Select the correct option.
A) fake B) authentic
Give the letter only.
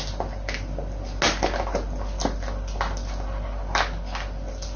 B